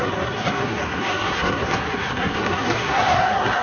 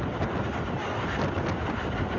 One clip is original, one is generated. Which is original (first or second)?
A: second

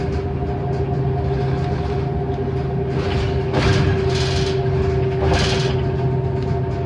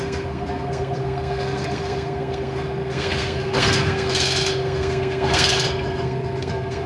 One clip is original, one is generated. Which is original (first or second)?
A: first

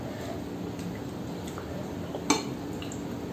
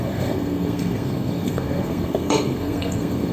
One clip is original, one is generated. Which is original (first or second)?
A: first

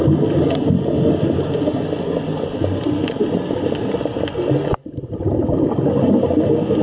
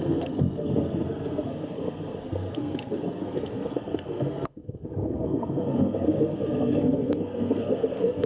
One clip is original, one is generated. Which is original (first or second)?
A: first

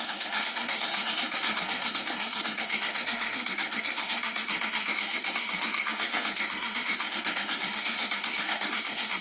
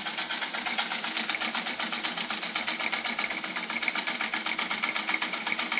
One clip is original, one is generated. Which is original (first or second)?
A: second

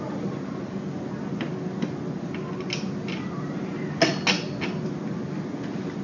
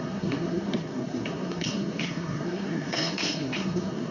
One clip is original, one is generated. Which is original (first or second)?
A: first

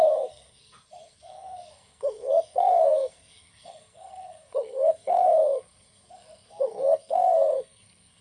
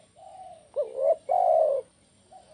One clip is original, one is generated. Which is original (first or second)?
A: second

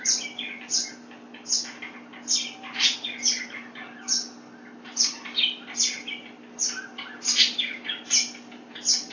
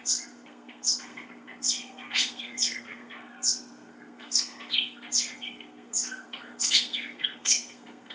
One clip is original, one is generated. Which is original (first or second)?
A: first